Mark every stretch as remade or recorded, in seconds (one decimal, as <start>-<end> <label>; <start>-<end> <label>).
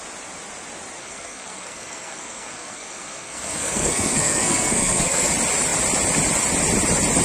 0.0-1.0 recorded; 1.0-5.3 remade; 5.3-7.2 recorded